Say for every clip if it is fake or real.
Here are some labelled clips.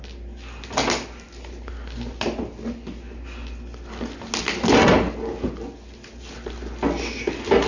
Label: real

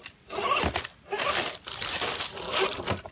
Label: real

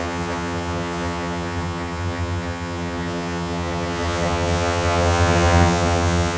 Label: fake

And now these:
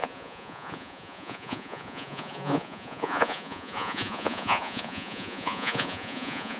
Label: fake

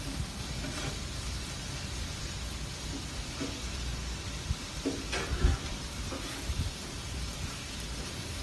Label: real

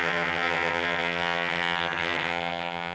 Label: fake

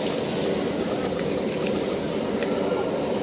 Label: real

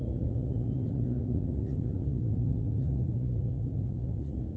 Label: fake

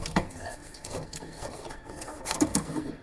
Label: fake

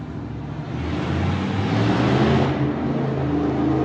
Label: real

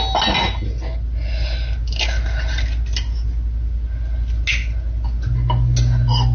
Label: real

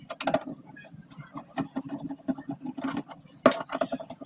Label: real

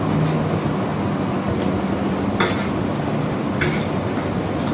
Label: real